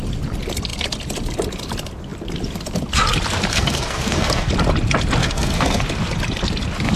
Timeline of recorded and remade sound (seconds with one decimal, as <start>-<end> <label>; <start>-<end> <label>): 0.0-3.5 recorded; 3.5-4.5 remade; 4.5-5.2 recorded; 5.2-5.8 remade; 5.8-7.0 recorded